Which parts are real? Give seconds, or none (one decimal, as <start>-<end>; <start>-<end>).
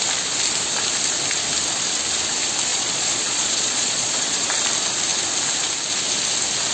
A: 0.0-2.7; 4.5-6.7